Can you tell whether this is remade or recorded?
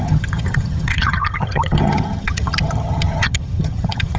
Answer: remade